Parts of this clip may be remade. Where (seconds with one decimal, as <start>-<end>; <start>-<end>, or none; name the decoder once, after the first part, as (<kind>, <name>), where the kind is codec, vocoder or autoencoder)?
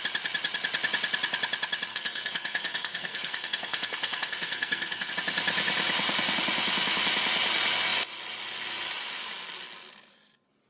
1.9-5.1 (codec, SNAC)